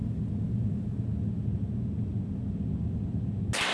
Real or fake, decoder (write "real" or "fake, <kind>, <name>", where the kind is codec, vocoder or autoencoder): real